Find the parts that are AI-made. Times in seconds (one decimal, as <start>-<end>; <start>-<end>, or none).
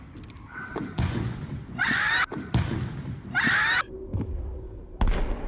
0.7-2.1